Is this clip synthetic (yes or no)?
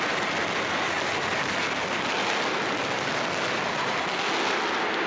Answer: no